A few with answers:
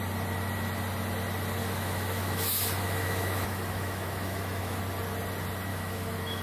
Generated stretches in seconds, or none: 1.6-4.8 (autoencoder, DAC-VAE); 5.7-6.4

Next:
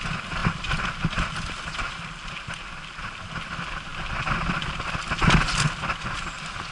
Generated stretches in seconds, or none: none

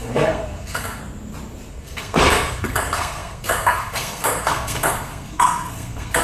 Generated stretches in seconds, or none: 0.0-1.0 (codec, SNAC); 1.7-6.2

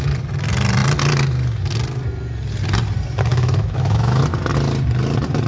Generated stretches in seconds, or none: 3.3-4.2 (autoencoder, DAC-VAE)

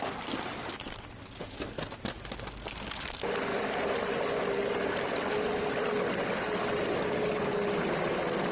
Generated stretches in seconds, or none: none